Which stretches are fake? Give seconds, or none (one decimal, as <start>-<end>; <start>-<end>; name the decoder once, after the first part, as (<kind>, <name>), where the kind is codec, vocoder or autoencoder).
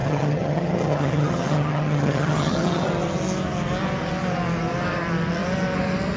0.0-2.9 (vocoder, HiFi-GAN)